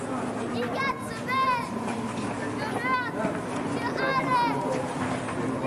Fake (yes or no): no